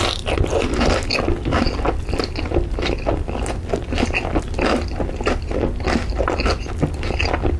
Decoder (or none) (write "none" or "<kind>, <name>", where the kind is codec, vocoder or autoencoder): none